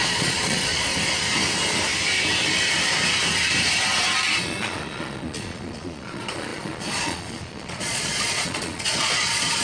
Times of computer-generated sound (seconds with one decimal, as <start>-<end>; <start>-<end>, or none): 0.0-0.9; 4.4-9.6